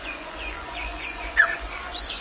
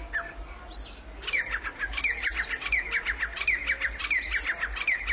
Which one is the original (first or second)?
second